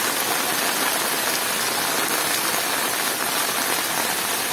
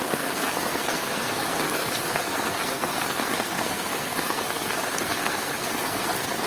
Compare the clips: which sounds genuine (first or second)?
first